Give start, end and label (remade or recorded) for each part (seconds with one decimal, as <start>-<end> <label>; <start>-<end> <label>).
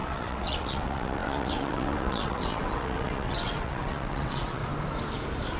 0.0-4.6 remade; 4.6-5.6 recorded